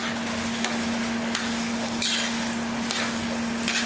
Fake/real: real